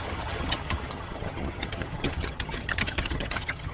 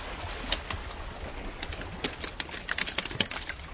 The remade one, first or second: first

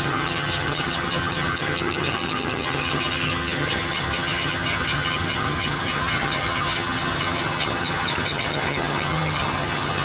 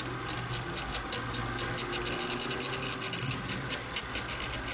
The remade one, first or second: first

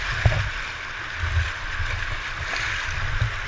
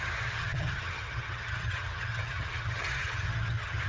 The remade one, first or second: second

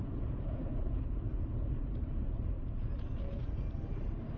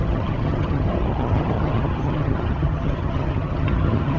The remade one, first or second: second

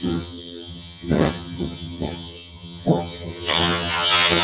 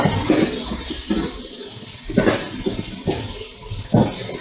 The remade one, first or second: first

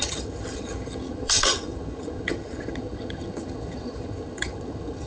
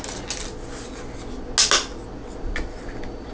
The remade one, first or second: first